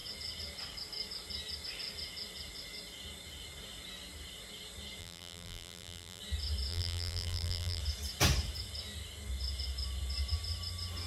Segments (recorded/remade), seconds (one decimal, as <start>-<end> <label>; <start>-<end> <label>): 0.0-5.0 recorded; 5.0-6.2 remade; 6.2-6.7 recorded; 6.7-7.8 remade; 7.8-11.1 recorded